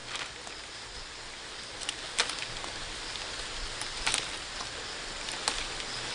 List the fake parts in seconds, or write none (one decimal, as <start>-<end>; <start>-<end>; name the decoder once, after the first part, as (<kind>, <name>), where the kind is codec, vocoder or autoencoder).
none